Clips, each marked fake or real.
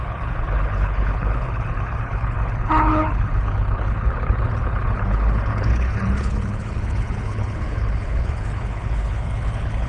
fake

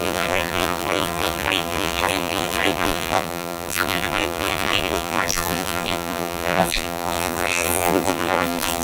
fake